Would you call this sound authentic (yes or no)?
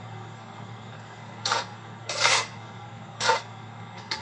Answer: no